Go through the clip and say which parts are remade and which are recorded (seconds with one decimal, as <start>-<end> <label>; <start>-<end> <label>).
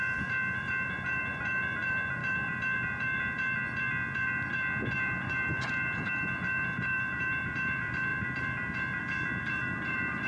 0.0-10.3 remade